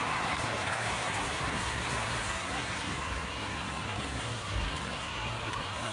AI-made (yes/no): yes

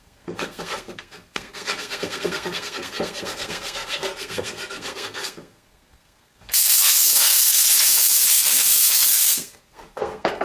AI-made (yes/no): yes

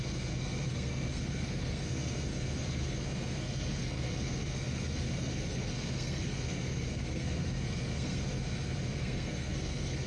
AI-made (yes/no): yes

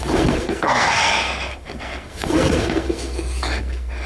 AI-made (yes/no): yes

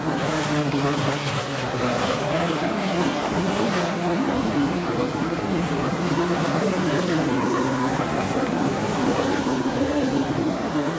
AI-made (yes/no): yes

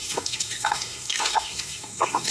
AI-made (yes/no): yes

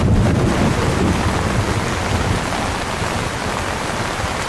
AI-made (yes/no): no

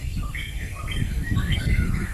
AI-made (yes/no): yes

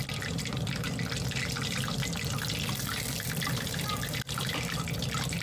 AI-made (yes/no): no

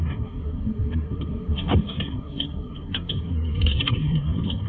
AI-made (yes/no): yes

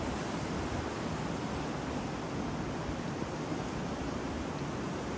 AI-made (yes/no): no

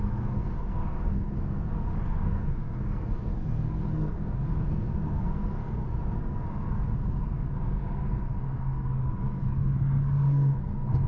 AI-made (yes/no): yes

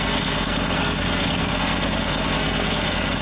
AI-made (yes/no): yes